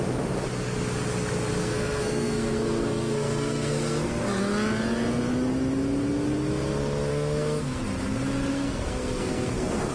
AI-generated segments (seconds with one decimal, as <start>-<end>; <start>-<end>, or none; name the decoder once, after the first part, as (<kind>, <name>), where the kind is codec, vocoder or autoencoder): 1.6-4.4 (codec, SNAC); 7.1-7.8; 8.5-9.9